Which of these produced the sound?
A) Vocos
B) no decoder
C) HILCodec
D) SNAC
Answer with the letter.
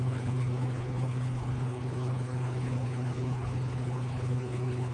C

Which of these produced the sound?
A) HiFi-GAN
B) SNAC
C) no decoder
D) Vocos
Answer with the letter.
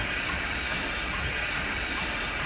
C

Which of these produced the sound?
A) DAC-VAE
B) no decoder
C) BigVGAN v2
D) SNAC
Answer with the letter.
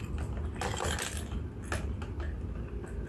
B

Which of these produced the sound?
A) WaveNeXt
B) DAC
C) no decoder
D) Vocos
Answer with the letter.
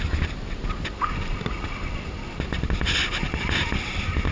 C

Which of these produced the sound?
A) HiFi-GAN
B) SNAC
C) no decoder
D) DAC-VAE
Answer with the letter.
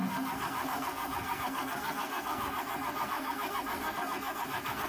B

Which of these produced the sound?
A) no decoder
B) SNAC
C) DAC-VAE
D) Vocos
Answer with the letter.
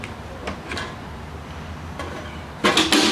A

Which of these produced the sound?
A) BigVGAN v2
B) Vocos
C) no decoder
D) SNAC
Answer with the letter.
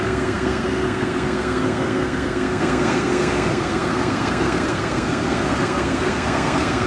D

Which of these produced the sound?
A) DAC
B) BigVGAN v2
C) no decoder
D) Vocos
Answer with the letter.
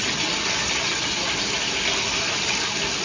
C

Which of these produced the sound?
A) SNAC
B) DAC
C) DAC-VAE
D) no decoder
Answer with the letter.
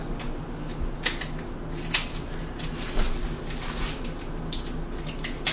D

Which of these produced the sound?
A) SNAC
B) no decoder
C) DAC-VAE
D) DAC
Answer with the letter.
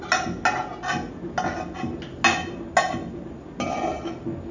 B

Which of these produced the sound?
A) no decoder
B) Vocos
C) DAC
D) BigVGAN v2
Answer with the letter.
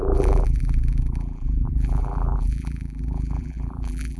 D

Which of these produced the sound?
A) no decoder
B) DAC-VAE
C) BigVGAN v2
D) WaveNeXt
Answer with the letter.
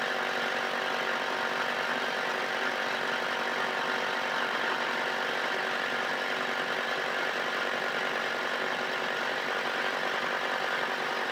A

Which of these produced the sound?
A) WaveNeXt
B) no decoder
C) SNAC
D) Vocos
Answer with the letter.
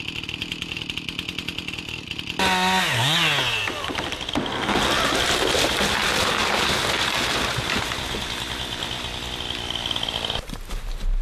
B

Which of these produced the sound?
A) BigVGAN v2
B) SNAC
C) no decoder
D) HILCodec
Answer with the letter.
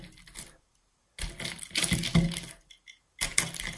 C